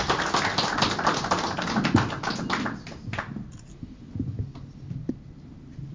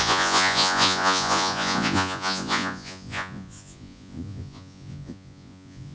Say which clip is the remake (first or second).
second